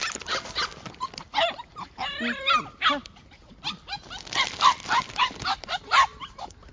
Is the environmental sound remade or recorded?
recorded